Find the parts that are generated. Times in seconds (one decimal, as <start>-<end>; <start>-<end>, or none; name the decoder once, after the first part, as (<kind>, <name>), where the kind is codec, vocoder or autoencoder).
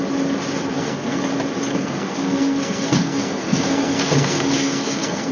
0.7-1.2 (codec, SNAC); 1.7-5.3